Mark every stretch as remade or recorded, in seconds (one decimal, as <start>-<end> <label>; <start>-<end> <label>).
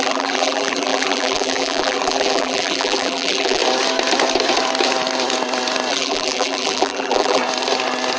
0.0-3.6 remade; 3.6-5.9 recorded; 5.9-7.4 remade; 7.4-8.2 recorded